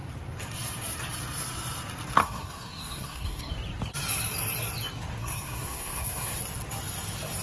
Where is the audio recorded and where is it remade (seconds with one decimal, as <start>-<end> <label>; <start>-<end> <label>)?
0.0-2.2 recorded; 2.2-3.5 remade; 3.5-5.2 recorded; 5.2-6.4 remade; 6.4-7.4 recorded